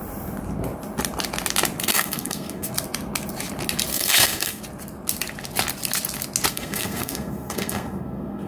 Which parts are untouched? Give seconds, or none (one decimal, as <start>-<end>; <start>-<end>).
0.0-1.9; 2.7-3.9; 4.6-6.5